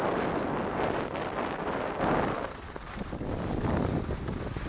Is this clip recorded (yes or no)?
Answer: yes